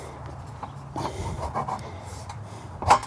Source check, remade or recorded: remade